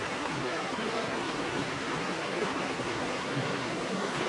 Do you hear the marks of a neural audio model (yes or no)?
yes